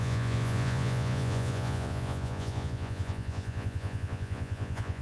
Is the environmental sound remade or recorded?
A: remade